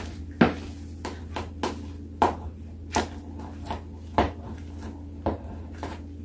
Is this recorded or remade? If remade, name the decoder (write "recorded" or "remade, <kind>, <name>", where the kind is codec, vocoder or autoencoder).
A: recorded